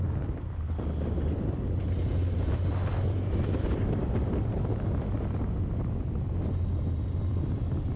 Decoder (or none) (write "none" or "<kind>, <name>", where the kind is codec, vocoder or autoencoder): vocoder, BigVGAN v2